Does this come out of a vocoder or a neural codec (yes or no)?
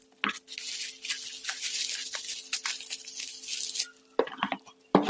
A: no